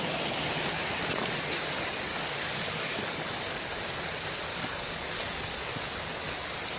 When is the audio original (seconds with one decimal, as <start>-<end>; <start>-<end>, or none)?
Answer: 0.0-2.1; 3.8-4.5; 5.8-6.8